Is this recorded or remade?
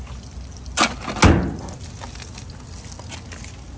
recorded